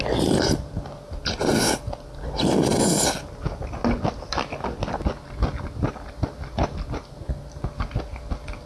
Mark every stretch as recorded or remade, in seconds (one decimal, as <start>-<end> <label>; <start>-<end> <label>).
0.0-8.7 recorded